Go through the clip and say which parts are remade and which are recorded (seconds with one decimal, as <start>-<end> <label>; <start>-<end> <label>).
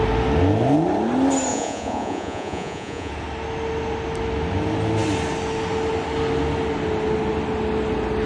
0.0-1.5 recorded; 1.5-3.1 remade; 3.1-8.3 recorded